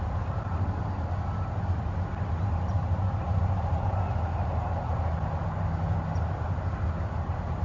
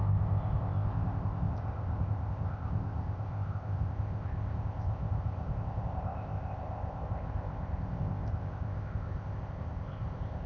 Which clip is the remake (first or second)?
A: second